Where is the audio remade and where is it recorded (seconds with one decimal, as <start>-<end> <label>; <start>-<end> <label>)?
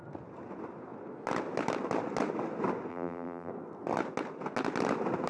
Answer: 0.0-2.9 recorded; 2.9-3.5 remade; 3.5-5.3 recorded